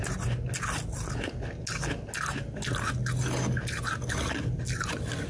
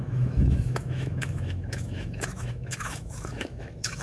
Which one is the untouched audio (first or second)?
first